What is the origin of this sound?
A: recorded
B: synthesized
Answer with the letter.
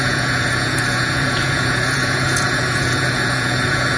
B